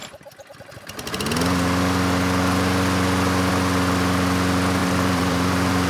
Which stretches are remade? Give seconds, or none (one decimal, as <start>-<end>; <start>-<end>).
4.8-5.9